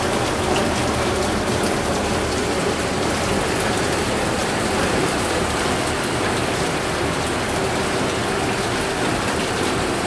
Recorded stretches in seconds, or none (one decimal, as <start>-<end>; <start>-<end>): 0.0-4.4; 5.5-10.1